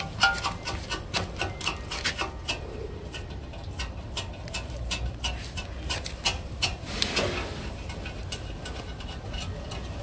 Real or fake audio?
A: real